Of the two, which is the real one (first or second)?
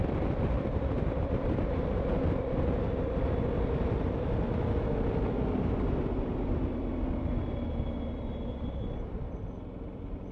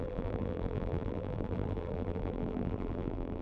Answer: first